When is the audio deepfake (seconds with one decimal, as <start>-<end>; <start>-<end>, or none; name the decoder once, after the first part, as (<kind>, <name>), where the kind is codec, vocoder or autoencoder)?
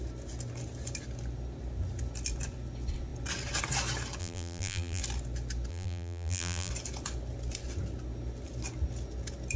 4.2-5.0 (vocoder, BigVGAN v2); 5.7-6.7